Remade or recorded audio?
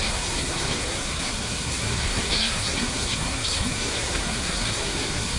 remade